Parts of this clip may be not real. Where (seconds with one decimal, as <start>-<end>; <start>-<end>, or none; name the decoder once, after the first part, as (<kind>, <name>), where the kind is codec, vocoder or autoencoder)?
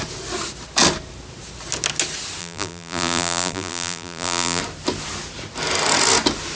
2.4-4.6 (vocoder, BigVGAN v2)